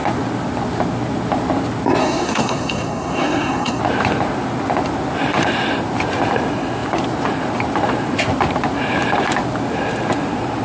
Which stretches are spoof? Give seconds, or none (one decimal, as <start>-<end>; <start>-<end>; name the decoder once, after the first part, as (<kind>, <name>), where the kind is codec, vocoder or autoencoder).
2.0-3.8 (codec, SNAC)